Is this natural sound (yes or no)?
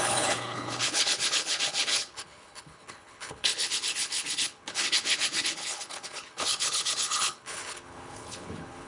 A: no